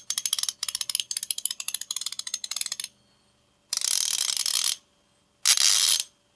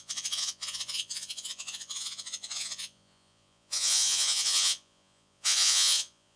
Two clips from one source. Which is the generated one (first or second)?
second